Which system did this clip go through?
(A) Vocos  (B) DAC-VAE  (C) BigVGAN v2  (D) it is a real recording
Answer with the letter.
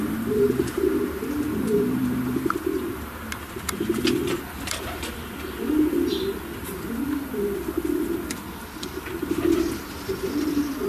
D